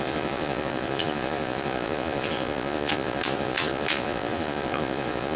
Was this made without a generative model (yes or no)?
no